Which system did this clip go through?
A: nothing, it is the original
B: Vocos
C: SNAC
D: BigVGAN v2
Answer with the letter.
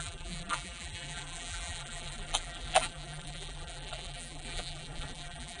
D